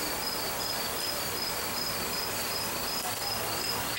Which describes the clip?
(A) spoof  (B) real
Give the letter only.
B